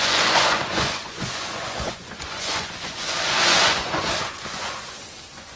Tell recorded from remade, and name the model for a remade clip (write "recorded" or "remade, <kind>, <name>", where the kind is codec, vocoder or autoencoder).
remade, vocoder, Vocos